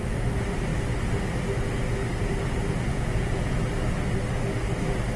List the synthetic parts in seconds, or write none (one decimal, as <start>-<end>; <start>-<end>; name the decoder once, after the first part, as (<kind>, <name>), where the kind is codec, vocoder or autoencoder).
2.9-3.6 (vocoder, Vocos)